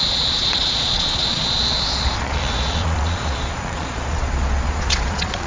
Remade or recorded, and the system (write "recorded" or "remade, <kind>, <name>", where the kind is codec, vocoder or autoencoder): remade, vocoder, Vocos